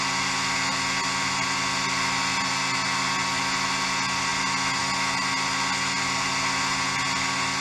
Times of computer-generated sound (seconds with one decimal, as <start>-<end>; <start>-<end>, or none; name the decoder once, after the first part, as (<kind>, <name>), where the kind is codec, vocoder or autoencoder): none